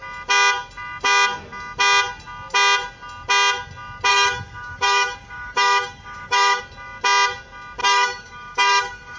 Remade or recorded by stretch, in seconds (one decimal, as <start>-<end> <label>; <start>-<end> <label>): 0.0-4.1 recorded; 4.1-6.6 remade; 6.6-7.8 recorded; 7.8-9.2 remade